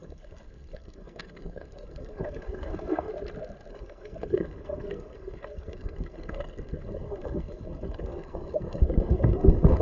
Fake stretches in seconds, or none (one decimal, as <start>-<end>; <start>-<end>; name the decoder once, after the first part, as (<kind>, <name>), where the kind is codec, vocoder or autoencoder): 0.0-3.1 (codec, SNAC); 3.7-9.8